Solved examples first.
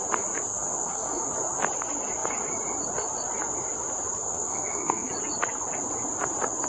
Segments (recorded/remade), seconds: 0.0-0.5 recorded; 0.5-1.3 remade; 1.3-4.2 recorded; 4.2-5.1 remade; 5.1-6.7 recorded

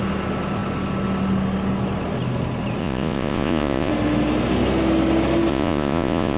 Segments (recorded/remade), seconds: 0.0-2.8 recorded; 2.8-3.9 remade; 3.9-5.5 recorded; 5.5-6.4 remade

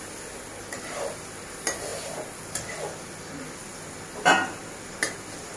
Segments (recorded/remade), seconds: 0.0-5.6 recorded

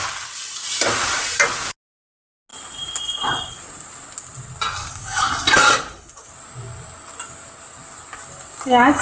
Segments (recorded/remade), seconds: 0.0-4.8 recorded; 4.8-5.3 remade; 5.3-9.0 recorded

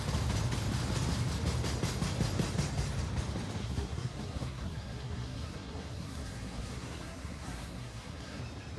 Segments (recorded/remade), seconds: 0.0-3.6 recorded; 3.6-8.4 remade; 8.4-8.8 recorded

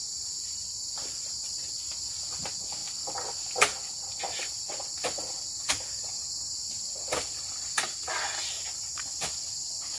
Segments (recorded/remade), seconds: 0.0-10.0 recorded